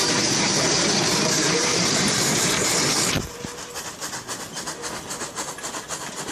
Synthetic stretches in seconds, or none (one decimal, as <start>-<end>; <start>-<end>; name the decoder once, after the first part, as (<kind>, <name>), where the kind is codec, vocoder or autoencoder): none